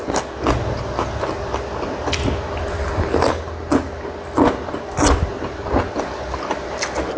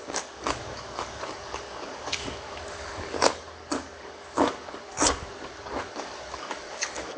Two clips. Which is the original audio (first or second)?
first